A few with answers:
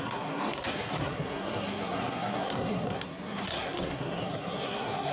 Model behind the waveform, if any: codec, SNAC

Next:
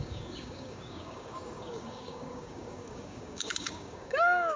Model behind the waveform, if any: codec, DAC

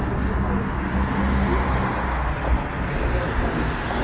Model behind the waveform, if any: none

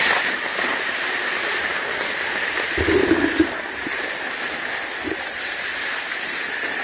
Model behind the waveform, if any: vocoder, BigVGAN v2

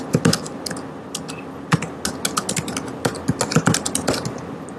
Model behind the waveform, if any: none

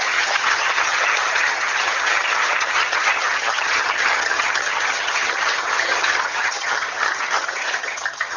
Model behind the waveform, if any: vocoder, HiFi-GAN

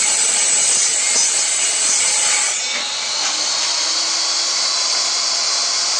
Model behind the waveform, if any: none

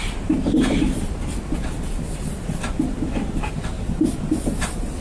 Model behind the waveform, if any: none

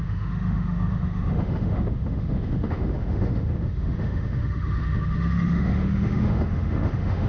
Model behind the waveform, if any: autoencoder, DAC-VAE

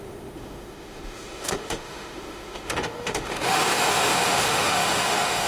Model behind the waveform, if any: autoencoder, DAC-VAE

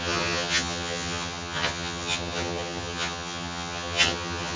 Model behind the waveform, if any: vocoder, HiFi-GAN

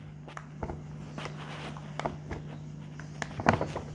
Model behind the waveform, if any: none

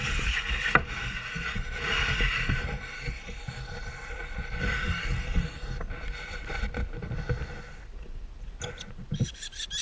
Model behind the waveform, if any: none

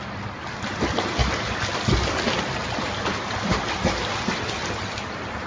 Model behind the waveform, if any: none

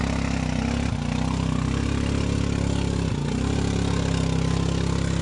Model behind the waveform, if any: none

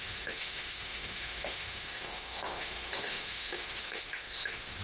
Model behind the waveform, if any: autoencoder, DAC-VAE